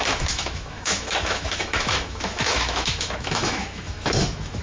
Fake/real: fake